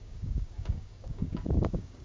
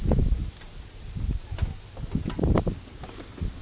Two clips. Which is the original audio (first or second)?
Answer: second